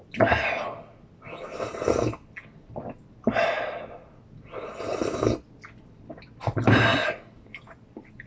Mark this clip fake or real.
real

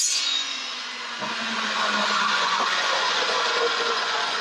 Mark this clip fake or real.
fake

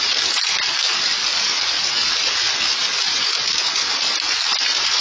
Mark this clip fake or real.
real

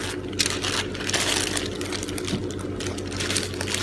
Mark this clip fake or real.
real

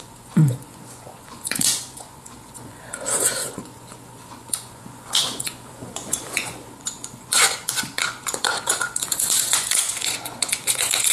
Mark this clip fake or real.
fake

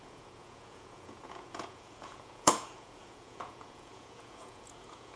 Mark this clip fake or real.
fake